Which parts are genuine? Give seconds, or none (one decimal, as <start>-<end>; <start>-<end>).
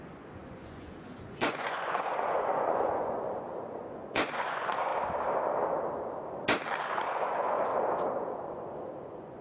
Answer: 4.9-6.9; 7.7-8.2